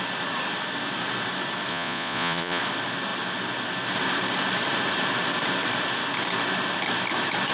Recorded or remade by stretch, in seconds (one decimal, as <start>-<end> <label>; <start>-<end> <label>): 0.0-1.7 recorded; 1.7-2.6 remade; 2.6-7.5 recorded